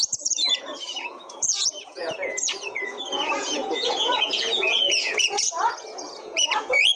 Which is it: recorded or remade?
remade